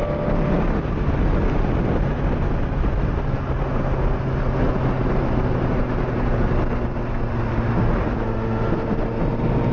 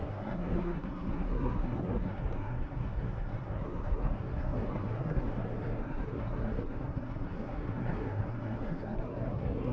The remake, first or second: second